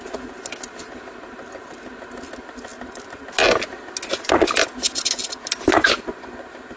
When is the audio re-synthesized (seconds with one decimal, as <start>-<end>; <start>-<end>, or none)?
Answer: none